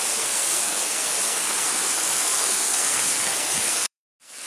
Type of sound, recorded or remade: remade